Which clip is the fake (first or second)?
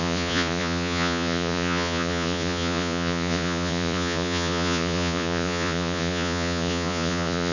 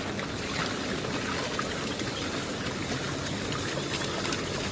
first